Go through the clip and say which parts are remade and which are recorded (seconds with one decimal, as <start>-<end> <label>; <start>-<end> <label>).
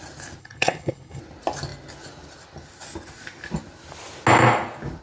0.0-0.4 recorded; 0.4-1.2 remade; 1.2-5.0 recorded